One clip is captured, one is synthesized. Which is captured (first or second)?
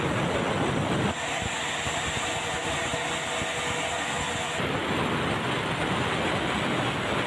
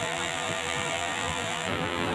first